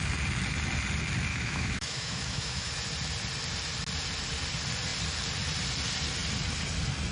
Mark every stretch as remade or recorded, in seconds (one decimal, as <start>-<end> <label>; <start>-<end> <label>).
0.0-1.3 recorded; 1.3-2.7 remade; 2.7-7.1 recorded